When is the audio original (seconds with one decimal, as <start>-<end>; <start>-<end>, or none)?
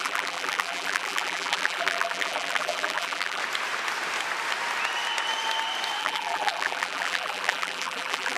3.4-6.0